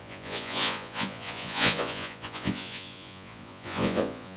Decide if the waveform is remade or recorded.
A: remade